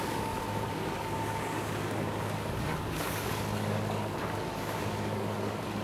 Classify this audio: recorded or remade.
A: remade